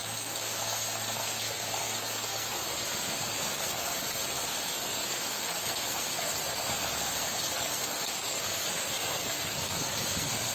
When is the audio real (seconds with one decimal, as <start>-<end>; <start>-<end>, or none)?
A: none